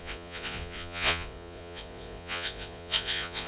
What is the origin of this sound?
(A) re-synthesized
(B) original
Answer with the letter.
A